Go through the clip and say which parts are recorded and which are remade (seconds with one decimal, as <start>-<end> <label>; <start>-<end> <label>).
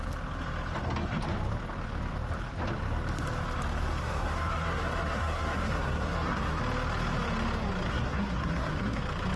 0.0-4.0 recorded; 4.0-6.6 remade; 6.6-7.9 recorded; 7.9-9.0 remade; 9.0-9.4 recorded